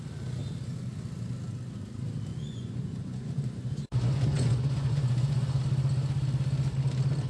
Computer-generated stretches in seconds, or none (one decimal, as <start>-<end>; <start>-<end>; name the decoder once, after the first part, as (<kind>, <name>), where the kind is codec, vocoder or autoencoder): 2.3-5.6 (vocoder, Vocos)